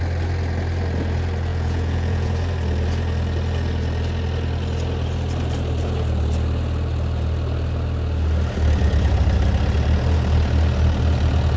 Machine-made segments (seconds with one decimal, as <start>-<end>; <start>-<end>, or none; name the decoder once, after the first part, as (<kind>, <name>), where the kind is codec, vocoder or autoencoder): 1.5-2.3 (vocoder, Vocos)